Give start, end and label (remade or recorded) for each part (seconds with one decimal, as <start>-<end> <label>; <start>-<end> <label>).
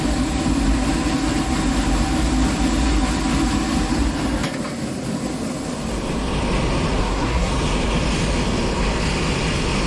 0.0-7.0 recorded; 7.0-7.5 remade; 7.5-9.9 recorded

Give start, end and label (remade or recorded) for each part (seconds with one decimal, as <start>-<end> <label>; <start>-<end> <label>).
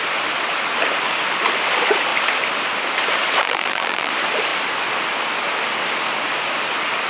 0.0-3.4 recorded; 3.4-4.1 remade; 4.1-7.1 recorded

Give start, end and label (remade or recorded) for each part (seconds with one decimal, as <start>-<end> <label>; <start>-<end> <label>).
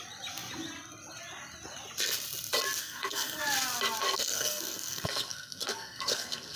0.0-2.8 recorded; 2.8-3.4 remade; 3.4-4.0 recorded; 4.0-6.6 remade